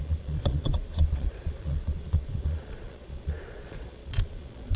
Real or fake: fake